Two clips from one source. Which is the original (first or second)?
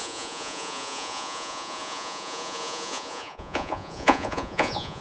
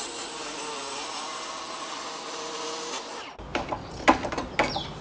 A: second